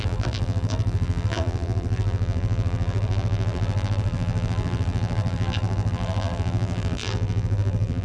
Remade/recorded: remade